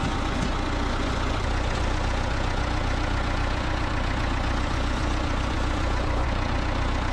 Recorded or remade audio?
remade